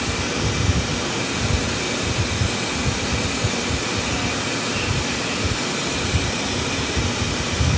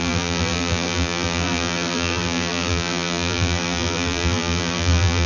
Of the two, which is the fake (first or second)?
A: second